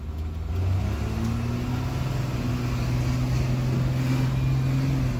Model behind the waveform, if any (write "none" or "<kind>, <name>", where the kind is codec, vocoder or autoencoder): none